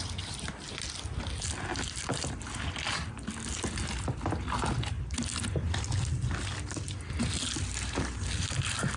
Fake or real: real